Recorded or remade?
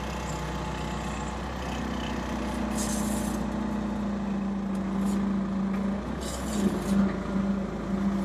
recorded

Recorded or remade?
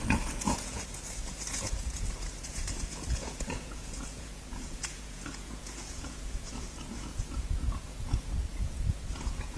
remade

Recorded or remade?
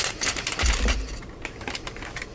remade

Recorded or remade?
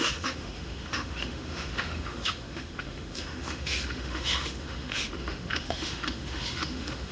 remade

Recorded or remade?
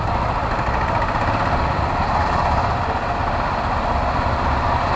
recorded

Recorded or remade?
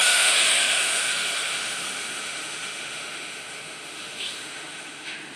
remade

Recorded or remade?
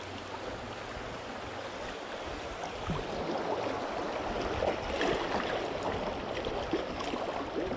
recorded